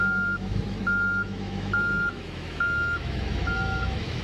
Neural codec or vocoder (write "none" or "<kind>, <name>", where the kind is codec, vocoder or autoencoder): autoencoder, DAC-VAE